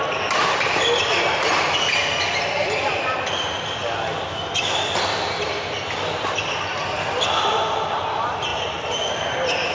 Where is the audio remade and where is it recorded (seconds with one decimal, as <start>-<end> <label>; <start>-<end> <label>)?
0.0-9.7 recorded